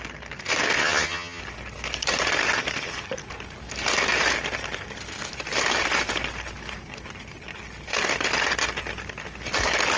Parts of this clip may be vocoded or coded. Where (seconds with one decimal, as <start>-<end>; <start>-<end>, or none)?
0.8-1.4